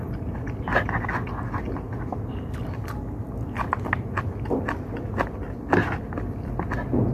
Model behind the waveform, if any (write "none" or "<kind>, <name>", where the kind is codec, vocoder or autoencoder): none